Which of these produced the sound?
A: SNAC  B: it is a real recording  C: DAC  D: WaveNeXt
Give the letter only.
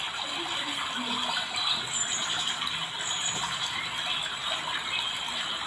B